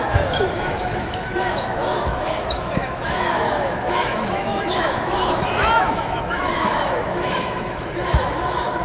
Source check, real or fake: fake